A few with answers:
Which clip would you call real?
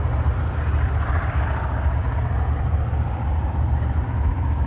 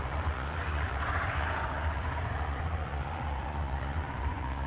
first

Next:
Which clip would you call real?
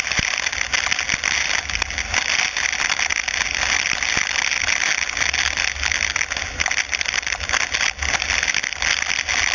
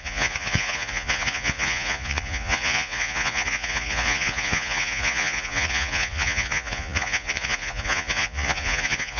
first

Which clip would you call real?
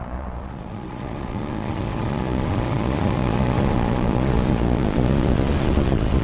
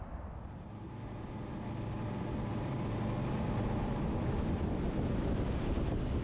second